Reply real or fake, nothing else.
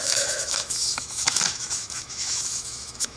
fake